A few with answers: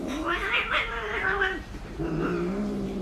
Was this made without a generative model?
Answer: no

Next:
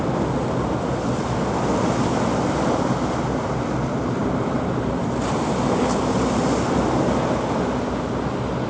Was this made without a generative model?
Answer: yes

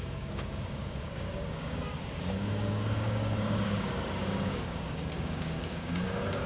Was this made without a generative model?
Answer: no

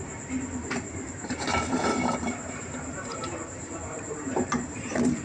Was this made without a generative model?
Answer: no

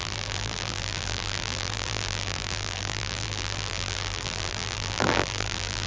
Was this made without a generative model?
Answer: no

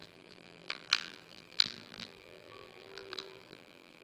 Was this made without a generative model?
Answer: no